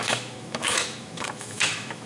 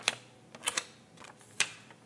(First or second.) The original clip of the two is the second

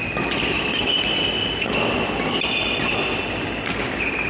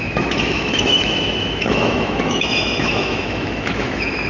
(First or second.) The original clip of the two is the first